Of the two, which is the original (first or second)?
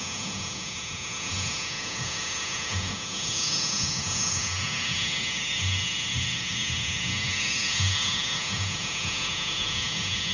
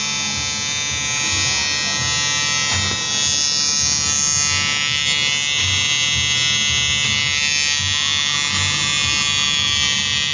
second